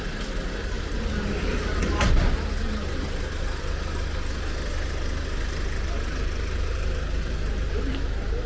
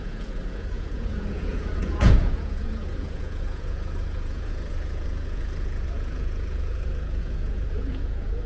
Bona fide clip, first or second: first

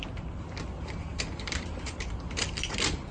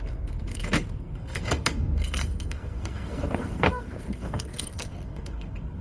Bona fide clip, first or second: first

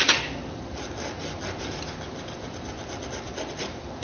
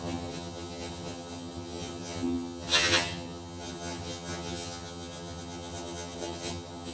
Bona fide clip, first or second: first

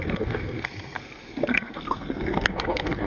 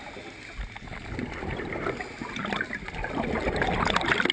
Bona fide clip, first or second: second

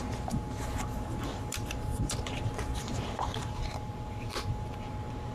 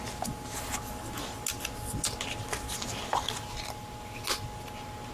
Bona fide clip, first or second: second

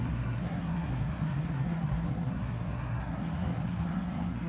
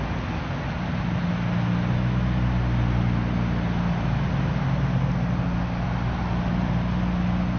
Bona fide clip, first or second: second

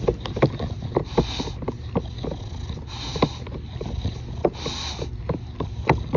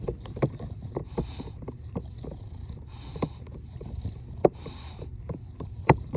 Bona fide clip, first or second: first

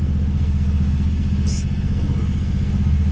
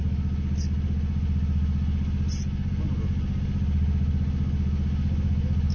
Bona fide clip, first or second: second